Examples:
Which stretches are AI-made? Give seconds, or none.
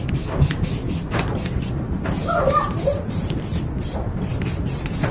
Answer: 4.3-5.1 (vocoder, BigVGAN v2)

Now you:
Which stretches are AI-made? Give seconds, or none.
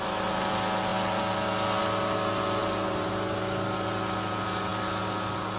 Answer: 2.6-3.1 (vocoder, BigVGAN v2)